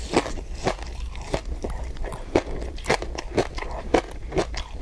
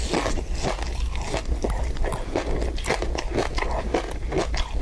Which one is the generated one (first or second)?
first